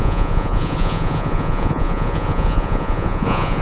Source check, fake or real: fake